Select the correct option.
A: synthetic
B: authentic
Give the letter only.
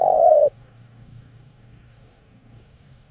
A